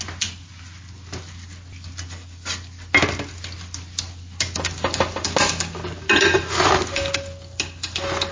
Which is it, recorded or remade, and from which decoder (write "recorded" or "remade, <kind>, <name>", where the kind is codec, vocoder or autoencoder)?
recorded